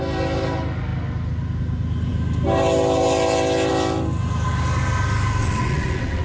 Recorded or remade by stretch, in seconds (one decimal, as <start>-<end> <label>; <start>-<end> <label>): 0.0-5.4 recorded; 5.4-6.2 remade

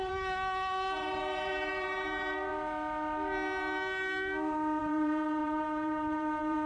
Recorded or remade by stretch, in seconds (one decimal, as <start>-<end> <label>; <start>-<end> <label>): 0.0-2.5 remade; 2.5-4.8 recorded; 4.8-6.7 remade

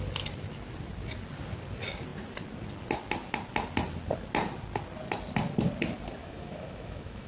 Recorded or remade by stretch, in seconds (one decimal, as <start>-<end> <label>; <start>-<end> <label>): 0.0-6.2 recorded; 6.2-7.3 remade

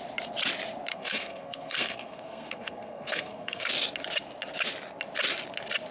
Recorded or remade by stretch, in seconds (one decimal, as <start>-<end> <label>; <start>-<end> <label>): 0.0-0.9 recorded; 0.9-3.7 remade; 3.7-5.9 recorded

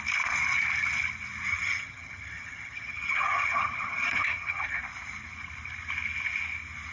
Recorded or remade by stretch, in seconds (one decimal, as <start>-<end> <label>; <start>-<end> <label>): 0.0-1.5 recorded; 1.5-4.8 remade; 4.8-6.9 recorded

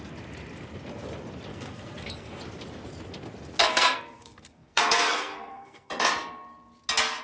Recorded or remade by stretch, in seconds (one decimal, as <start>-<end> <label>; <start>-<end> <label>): 0.0-1.5 recorded; 1.5-2.4 remade; 2.4-3.6 recorded; 3.6-5.9 remade; 5.9-7.2 recorded

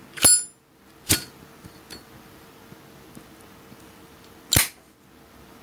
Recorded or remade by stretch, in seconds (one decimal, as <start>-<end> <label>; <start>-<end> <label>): 0.0-5.6 recorded

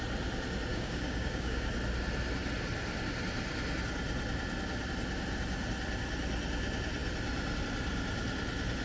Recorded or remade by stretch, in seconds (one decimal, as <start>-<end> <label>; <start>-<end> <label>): 0.0-0.7 recorded; 0.7-1.7 remade; 1.7-8.8 recorded